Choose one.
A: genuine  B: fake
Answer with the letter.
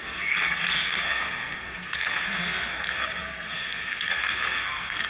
B